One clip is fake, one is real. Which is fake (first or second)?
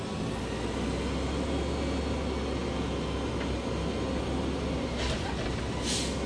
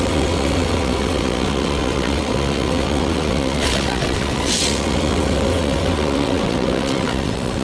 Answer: second